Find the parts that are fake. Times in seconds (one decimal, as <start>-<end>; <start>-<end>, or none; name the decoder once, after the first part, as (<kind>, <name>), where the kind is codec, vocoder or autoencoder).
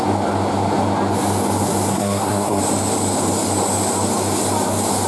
1.9-2.6 (codec, SNAC)